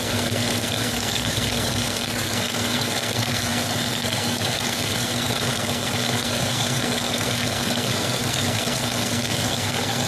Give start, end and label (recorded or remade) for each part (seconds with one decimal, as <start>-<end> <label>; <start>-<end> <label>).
0.0-10.1 remade